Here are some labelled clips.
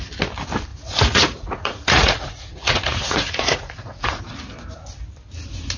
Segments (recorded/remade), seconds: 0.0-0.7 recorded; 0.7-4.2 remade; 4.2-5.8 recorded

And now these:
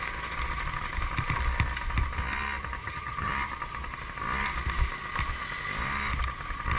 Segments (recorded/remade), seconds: 0.0-2.8 recorded; 2.8-3.3 remade; 3.3-6.8 recorded

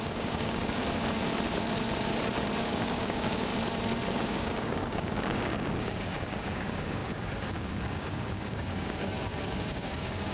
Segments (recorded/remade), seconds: 0.0-0.8 remade; 0.8-2.6 recorded; 2.6-3.5 remade; 3.5-4.1 recorded; 4.1-10.3 remade

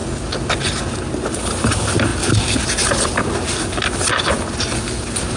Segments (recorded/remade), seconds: 0.0-5.4 recorded